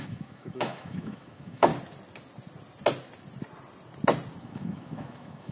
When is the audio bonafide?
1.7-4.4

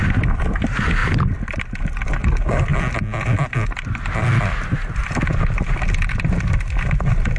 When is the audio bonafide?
0.0-7.4

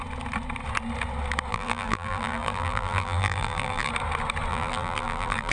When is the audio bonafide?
0.0-1.5; 3.9-4.5

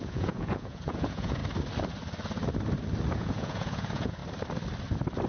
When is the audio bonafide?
1.4-3.1; 4.2-5.3

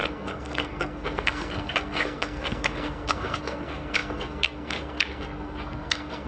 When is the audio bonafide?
none

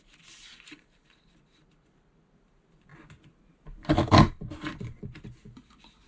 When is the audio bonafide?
2.9-4.1

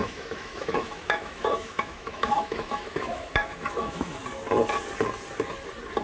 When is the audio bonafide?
4.2-6.0

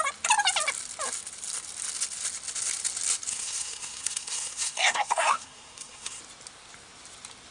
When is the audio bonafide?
0.0-3.3; 6.2-7.5